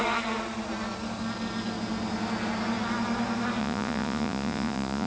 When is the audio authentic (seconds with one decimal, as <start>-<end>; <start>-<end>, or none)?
0.0-3.6